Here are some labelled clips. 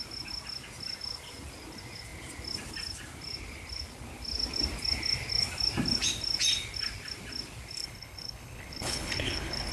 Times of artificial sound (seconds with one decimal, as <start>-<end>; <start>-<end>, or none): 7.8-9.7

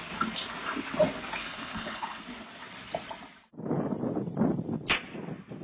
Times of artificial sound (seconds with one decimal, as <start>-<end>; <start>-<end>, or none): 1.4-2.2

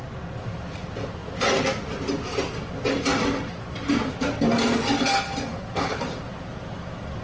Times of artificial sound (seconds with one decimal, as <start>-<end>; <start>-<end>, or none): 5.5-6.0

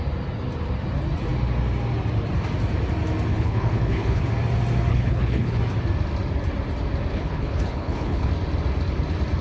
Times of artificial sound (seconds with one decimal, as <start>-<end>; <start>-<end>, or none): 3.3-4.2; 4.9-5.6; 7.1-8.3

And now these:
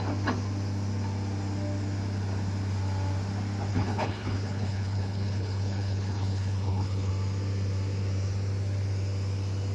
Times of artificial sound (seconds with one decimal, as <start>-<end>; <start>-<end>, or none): 3.7-7.1

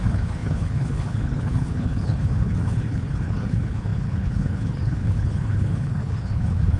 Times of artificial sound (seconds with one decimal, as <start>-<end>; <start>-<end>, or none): 0.0-6.8

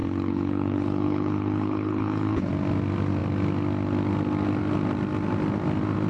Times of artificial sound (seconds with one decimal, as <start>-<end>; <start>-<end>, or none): 0.0-2.5

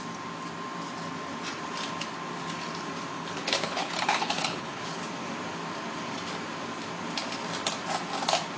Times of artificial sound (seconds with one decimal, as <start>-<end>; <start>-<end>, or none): 3.1-5.0